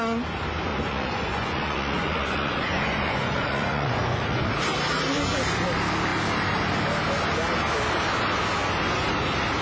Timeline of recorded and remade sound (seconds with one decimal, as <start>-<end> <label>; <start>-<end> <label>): 0.0-0.7 recorded; 0.7-4.5 remade; 4.5-9.6 recorded